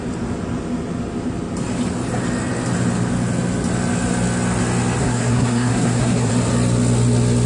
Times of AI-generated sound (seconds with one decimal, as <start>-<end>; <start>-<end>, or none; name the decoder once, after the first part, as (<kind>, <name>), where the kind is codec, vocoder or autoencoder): 5.0-6.3 (codec, SNAC)